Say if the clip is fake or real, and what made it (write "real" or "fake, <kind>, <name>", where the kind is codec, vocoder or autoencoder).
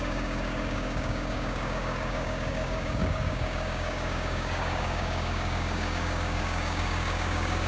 fake, codec, DAC